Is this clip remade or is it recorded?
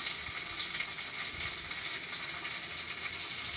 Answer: recorded